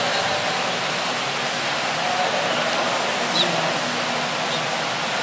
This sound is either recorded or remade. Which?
recorded